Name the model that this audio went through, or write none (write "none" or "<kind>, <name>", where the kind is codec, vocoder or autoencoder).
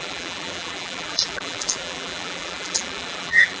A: vocoder, BigVGAN v2